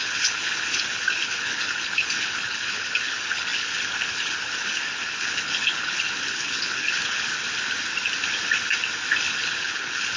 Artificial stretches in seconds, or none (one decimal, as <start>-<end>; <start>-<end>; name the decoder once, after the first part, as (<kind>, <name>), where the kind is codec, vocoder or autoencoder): 0.0-7.3 (codec, HILCodec); 9.2-10.2